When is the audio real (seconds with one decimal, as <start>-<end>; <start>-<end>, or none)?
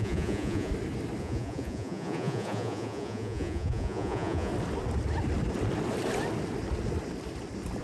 0.7-1.2; 4.5-7.8